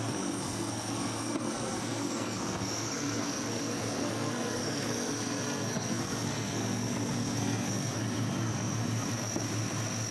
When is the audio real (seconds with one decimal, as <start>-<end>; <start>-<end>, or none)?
8.0-10.1